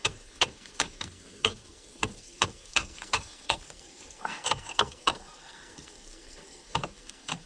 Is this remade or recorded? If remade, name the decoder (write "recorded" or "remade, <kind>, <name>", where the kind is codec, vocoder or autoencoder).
remade, codec, SNAC